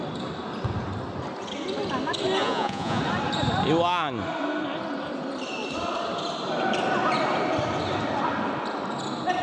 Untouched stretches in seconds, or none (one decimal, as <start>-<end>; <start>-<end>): 0.0-2.4; 3.0-9.4